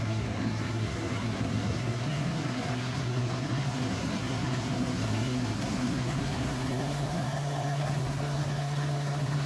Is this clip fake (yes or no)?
yes